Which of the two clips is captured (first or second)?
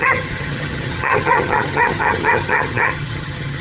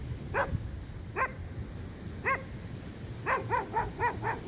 second